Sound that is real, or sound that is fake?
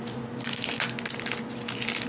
real